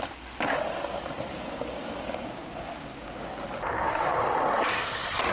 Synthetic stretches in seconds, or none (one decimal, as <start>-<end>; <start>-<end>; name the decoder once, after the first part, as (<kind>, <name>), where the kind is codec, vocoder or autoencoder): 1.3-3.1 (codec, DAC)